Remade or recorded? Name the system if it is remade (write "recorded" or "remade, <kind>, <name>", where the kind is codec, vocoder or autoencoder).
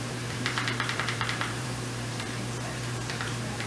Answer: remade, vocoder, BigVGAN v2